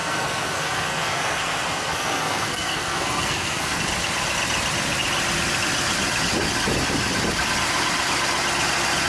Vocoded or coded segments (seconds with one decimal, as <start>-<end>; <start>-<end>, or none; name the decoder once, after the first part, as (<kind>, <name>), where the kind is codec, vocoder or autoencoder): 0.0-3.8 (codec, SNAC)